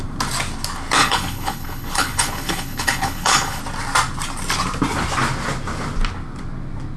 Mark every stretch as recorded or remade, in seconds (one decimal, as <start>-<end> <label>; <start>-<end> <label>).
0.0-1.0 recorded; 1.0-3.6 remade; 3.6-7.0 recorded